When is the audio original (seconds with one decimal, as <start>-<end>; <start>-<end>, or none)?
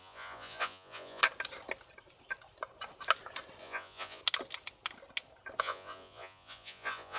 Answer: 1.2-3.6; 4.2-5.6